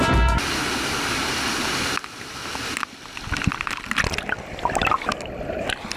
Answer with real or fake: real